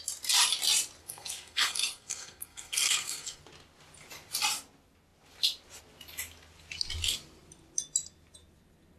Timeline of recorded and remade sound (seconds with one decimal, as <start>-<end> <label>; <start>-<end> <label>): 0.0-1.0 recorded; 1.0-3.4 remade; 3.4-9.0 recorded